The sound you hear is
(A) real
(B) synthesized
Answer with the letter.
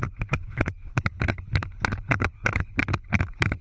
B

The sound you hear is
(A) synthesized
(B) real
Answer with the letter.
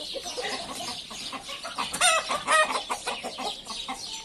B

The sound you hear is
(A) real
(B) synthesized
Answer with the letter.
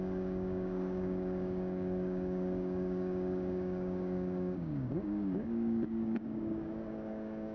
B